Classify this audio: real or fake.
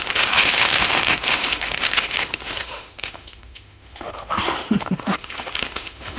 fake